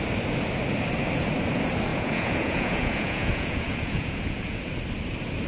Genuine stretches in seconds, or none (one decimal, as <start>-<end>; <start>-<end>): 0.0-1.9; 4.6-5.5